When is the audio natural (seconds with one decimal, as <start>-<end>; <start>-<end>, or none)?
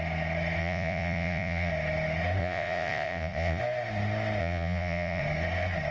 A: 0.0-0.6; 1.7-2.4; 3.6-4.4; 5.2-5.9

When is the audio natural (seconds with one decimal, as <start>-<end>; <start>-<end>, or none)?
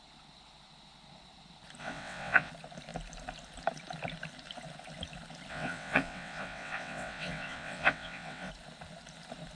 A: 0.0-1.8; 2.5-5.5; 8.5-9.5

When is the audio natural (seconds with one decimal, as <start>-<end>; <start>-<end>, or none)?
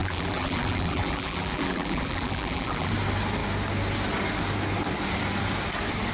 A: 2.9-6.1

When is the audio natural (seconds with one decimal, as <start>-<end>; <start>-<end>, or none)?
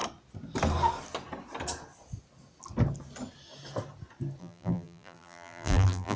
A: 0.0-4.4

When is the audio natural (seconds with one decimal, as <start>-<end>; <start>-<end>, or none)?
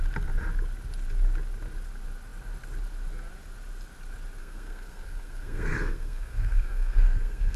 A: 0.0-4.4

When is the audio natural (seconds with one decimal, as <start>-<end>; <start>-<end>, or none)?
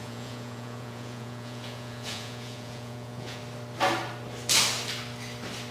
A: 3.4-5.7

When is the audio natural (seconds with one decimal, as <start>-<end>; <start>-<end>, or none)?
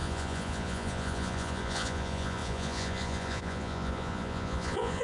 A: none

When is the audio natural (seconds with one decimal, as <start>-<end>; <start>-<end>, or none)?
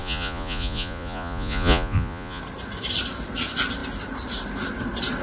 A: 2.4-5.2